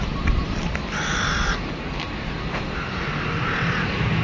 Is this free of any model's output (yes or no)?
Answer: yes